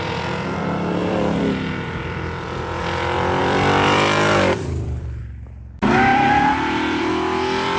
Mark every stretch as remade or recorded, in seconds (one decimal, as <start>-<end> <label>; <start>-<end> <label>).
0.0-1.0 recorded; 1.0-2.8 remade; 2.8-3.4 recorded; 3.4-5.2 remade; 5.2-6.1 recorded; 6.1-7.1 remade; 7.1-7.8 recorded